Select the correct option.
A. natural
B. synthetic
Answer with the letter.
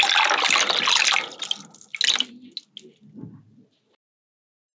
A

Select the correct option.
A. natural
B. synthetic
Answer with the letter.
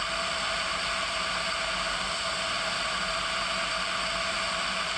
A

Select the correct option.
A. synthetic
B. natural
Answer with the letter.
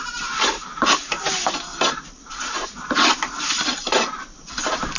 A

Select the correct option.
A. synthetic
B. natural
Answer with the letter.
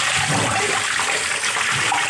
B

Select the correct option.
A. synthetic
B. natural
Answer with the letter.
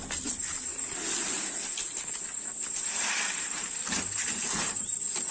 B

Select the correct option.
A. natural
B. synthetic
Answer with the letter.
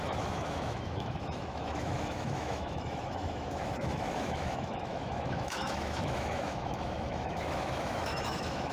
B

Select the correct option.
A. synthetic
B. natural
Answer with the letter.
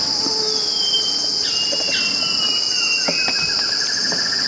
B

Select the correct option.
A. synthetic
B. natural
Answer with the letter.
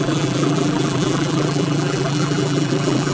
A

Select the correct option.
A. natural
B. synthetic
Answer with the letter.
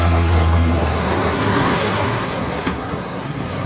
B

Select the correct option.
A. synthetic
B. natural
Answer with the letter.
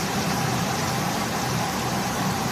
A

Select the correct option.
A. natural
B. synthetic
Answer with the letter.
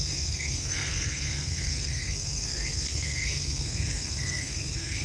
B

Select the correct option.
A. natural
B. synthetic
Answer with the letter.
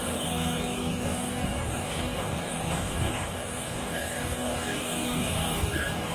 B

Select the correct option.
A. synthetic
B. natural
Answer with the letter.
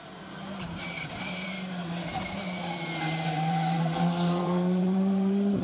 A